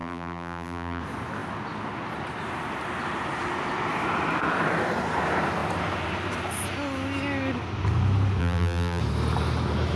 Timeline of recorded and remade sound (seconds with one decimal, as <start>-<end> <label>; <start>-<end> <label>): 0.0-1.0 remade; 1.0-8.4 recorded; 8.4-9.0 remade; 9.0-10.0 recorded